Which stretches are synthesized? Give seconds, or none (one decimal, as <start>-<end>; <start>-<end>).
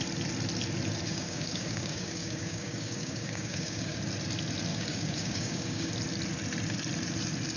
1.1-4.0; 4.7-5.9